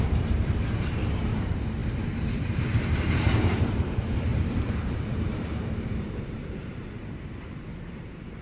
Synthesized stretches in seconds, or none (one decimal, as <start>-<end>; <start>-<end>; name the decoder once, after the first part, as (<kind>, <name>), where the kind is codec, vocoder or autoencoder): 0.0-8.4 (vocoder, BigVGAN v2)